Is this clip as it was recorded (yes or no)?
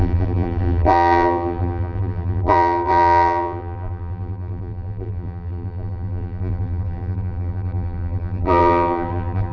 no